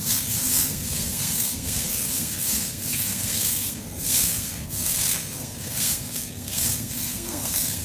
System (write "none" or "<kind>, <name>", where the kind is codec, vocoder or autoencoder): codec, SNAC